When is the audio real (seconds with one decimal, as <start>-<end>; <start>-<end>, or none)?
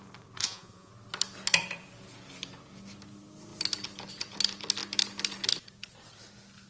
0.0-0.4; 0.9-6.7